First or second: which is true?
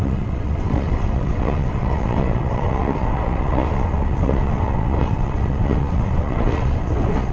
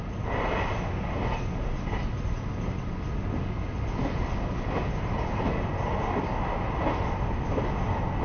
second